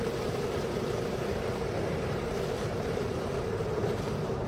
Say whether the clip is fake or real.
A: fake